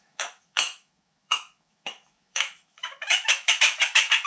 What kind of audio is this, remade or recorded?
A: remade